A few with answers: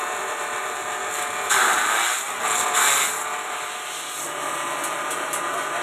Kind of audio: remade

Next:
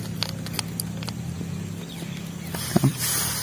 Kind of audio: recorded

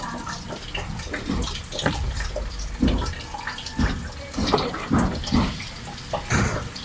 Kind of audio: remade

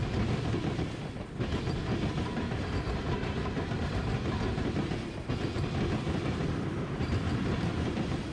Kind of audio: remade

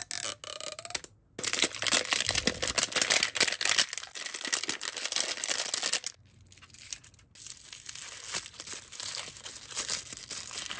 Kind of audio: recorded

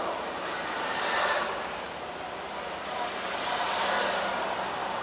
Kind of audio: recorded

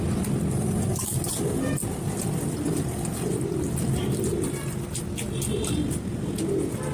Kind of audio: recorded